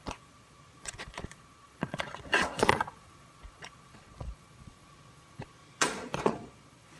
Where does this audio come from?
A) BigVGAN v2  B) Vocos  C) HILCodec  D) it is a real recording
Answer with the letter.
B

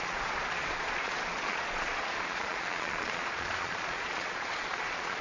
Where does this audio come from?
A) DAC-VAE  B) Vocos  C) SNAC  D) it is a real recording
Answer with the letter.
B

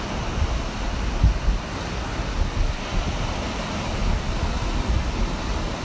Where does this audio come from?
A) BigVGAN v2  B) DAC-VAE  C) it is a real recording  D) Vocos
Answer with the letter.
C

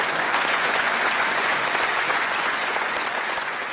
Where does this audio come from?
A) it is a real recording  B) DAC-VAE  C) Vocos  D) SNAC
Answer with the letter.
C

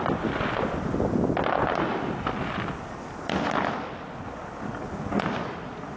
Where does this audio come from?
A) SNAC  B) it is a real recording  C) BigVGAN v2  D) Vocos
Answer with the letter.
B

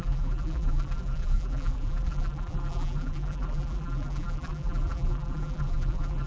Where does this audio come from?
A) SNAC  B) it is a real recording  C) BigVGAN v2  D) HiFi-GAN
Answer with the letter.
C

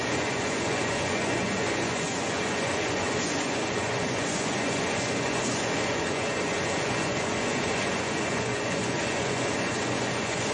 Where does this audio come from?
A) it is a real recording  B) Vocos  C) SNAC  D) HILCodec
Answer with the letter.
B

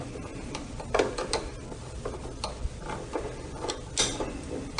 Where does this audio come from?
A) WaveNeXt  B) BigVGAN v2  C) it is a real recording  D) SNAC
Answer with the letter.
C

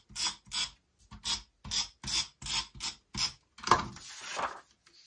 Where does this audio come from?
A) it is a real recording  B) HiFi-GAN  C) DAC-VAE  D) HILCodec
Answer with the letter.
A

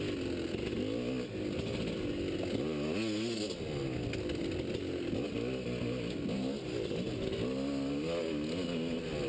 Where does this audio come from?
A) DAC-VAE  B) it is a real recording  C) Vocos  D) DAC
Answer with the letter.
B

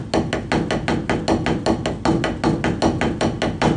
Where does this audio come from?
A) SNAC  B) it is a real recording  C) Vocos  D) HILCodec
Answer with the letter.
B